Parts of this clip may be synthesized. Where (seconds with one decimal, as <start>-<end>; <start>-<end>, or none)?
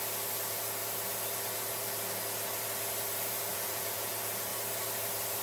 3.5-4.1